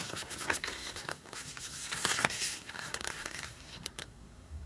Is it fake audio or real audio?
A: fake